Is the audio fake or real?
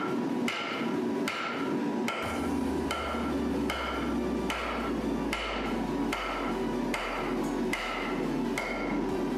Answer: real